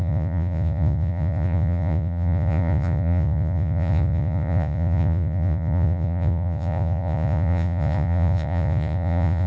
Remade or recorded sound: remade